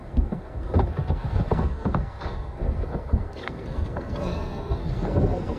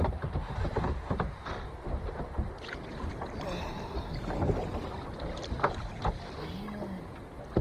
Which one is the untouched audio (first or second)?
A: second